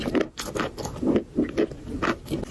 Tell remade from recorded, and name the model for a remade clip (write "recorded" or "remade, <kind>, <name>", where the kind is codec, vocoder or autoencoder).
recorded